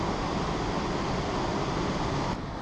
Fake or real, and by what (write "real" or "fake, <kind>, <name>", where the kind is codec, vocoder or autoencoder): real